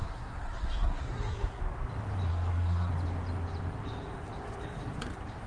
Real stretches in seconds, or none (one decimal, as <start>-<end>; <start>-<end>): 1.6-2.3; 2.9-5.5